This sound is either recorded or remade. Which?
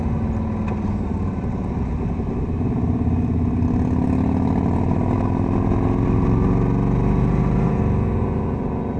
recorded